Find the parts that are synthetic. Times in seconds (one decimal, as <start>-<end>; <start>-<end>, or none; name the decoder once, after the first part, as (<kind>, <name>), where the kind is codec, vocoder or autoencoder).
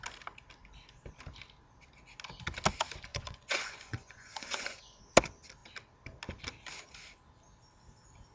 3.1-5.0 (vocoder, Vocos)